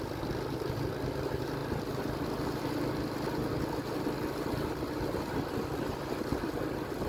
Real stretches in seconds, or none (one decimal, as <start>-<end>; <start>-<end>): 0.0-7.1